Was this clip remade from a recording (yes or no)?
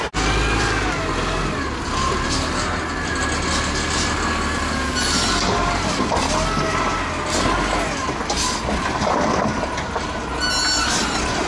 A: no